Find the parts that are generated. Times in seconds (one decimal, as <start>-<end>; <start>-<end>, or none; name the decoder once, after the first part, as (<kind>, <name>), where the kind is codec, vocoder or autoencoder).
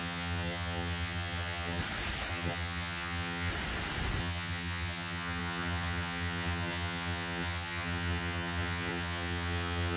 0.0-1.8 (vocoder, HiFi-GAN); 2.3-3.5; 4.2-10.0